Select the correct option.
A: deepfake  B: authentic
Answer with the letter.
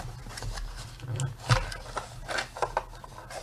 B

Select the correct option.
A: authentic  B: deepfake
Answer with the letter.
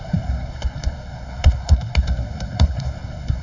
B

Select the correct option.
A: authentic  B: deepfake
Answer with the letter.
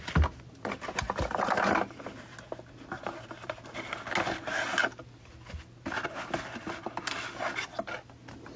A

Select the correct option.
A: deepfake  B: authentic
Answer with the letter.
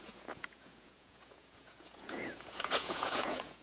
A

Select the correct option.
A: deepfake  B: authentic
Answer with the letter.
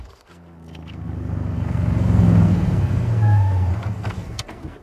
A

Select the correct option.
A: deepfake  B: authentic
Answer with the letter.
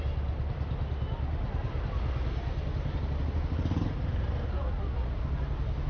B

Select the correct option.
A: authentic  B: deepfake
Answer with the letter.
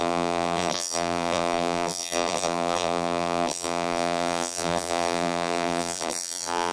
B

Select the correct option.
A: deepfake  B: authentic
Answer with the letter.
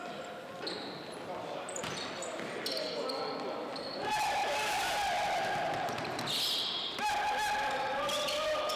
B